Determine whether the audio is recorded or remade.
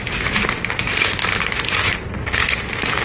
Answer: recorded